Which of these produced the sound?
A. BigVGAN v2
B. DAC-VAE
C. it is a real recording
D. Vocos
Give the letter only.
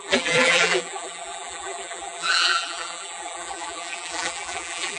A